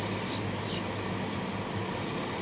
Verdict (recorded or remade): recorded